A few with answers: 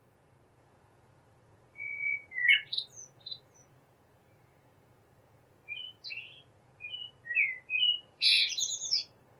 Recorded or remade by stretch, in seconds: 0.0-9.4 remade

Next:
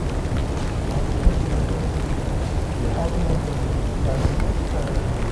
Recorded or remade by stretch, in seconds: 0.0-5.3 recorded

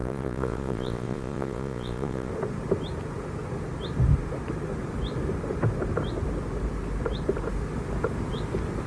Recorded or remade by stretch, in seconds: 0.0-2.3 remade; 2.3-8.9 recorded

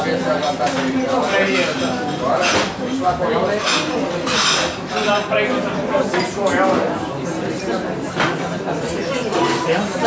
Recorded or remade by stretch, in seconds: 0.0-10.1 recorded

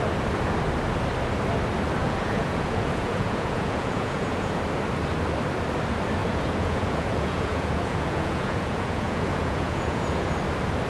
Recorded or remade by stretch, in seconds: 0.0-2.0 recorded; 2.0-4.6 remade; 4.6-6.2 recorded; 6.2-10.3 remade; 10.3-10.9 recorded

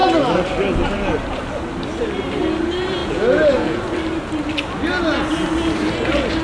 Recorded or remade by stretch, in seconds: 0.0-3.0 recorded; 3.0-3.8 remade; 3.8-6.4 recorded

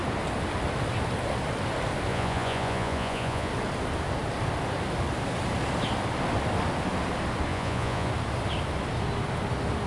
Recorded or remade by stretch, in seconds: 0.0-2.1 recorded; 2.1-3.5 remade; 3.5-7.5 recorded; 7.5-8.1 remade; 8.1-9.9 recorded

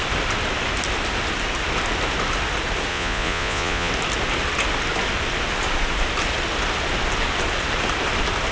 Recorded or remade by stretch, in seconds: 0.0-2.9 recorded; 2.9-3.9 remade; 3.9-8.5 recorded